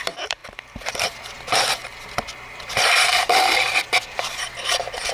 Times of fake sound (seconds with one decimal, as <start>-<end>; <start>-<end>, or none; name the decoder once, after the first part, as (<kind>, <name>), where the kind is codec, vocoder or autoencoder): 0.0-5.1 (vocoder, BigVGAN v2)